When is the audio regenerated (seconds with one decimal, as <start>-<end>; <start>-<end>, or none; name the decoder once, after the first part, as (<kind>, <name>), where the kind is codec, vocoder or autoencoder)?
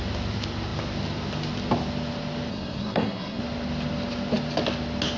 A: 2.5-3.4 (codec, SNAC)